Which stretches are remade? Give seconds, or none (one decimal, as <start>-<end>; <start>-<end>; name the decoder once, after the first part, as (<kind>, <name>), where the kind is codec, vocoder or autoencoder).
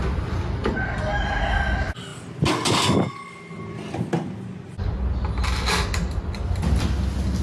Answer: none